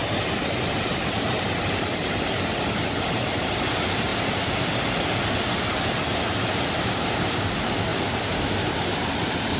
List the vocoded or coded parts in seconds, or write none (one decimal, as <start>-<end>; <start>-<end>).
0.0-3.6; 4.1-4.8; 7.9-9.1

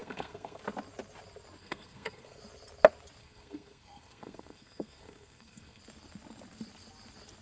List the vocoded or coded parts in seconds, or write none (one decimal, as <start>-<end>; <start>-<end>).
0.0-0.6; 1.6-2.4; 3.2-5.8

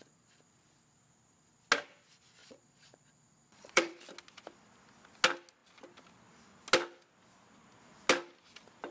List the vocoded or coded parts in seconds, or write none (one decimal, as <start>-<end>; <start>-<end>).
2.4-4.0